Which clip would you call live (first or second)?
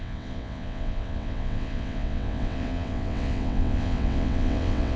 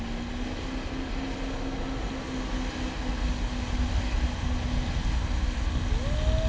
second